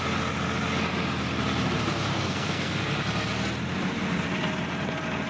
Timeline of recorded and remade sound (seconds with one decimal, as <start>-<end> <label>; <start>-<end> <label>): 0.0-2.1 recorded; 2.1-2.7 remade; 2.7-5.3 recorded